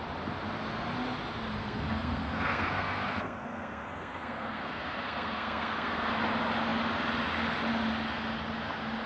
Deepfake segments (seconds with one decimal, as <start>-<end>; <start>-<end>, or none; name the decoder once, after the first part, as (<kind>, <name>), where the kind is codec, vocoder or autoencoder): 1.6-6.1 (codec, SNAC)

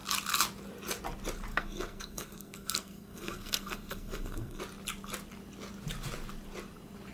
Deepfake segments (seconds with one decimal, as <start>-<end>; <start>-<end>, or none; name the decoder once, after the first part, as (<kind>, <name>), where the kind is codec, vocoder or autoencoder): 1.5-4.6 (codec, SNAC)

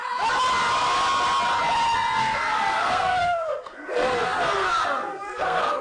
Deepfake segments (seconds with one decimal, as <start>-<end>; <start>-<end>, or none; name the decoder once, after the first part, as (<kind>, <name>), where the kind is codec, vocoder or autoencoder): 2.2-5.8 (codec, SNAC)

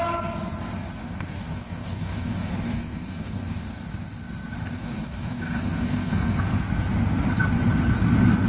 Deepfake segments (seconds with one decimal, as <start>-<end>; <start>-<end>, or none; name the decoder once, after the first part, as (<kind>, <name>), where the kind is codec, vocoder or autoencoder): 1.0-3.8 (codec, SNAC); 4.8-6.7

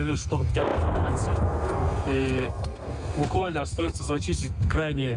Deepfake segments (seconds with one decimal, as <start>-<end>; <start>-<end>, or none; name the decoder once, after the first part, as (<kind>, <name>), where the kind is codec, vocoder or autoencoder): 0.0-5.2 (codec, SNAC)

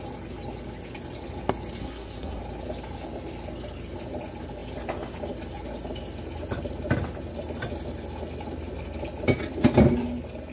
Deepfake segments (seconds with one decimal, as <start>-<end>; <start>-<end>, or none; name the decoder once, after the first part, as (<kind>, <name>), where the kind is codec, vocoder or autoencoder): 1.8-2.4 (codec, SNAC)

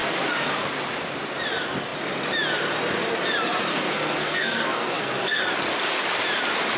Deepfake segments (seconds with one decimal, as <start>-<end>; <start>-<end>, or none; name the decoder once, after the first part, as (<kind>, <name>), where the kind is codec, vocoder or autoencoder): 3.7-5.4 (codec, SNAC)

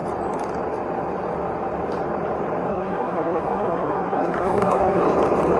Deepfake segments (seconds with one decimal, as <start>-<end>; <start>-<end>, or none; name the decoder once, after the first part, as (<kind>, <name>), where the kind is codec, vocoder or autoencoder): 2.7-5.0 (codec, SNAC)